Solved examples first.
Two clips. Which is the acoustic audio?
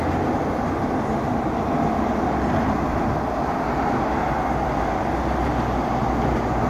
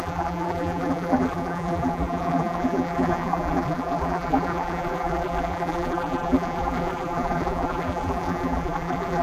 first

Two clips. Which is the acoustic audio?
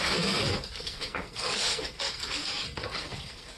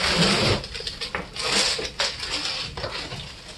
second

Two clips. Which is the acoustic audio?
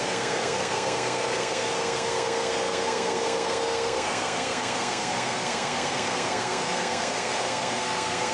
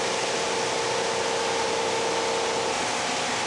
second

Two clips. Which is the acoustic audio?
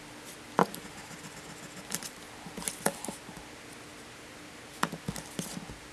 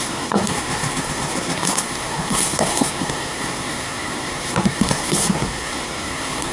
first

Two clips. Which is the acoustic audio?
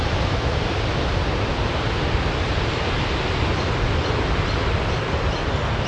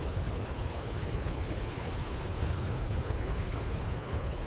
first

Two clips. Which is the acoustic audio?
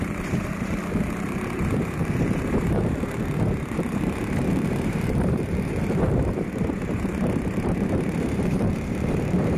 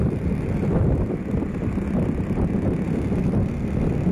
second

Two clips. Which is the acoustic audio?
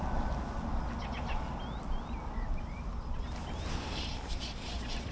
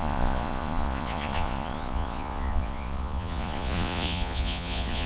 first